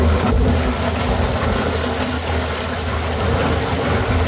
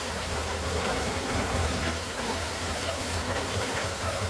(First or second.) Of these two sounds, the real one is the first